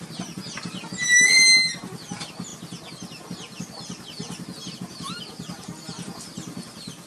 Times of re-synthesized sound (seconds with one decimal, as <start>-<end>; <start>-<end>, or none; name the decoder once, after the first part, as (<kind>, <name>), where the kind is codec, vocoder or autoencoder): none